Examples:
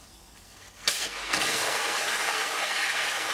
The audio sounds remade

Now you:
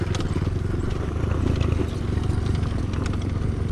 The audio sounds recorded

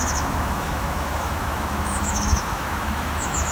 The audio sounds remade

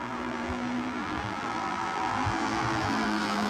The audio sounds remade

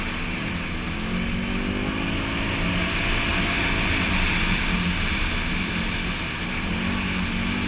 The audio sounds recorded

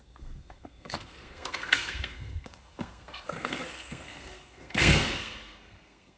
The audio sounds remade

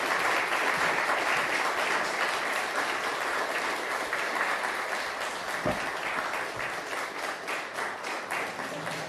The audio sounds recorded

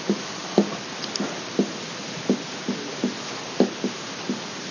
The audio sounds recorded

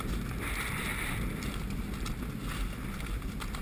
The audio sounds recorded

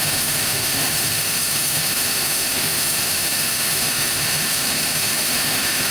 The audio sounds remade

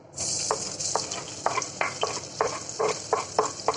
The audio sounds recorded